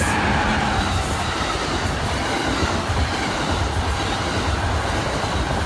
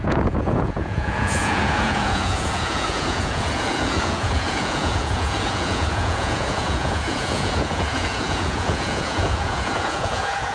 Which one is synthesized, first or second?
second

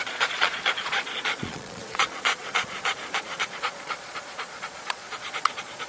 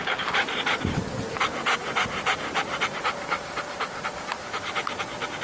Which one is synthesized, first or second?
first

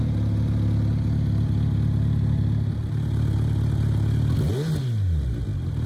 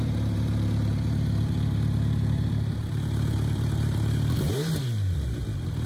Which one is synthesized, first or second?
second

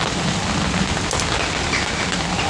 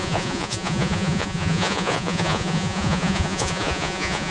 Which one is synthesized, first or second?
second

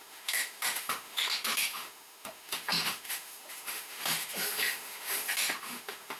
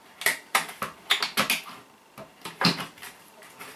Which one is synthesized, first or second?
first